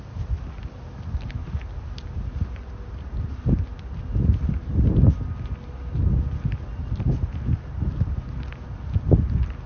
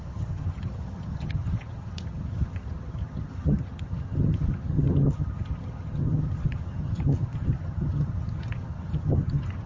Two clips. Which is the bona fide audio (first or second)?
first